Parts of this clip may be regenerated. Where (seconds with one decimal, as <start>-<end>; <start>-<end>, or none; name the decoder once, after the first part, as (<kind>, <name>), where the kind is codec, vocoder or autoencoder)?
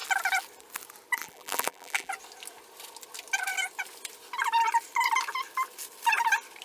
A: 1.2-2.1 (vocoder, BigVGAN v2)